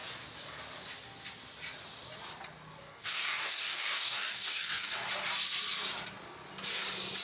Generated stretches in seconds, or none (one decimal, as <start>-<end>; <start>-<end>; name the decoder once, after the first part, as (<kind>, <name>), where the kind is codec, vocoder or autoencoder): 2.8-4.9 (codec, DAC)